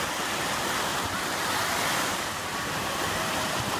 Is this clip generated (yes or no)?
yes